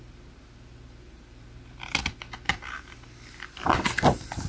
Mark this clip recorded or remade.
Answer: recorded